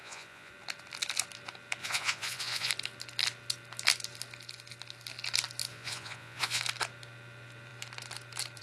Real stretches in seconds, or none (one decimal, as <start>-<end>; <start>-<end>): 0.5-1.8; 2.7-5.7; 6.6-8.6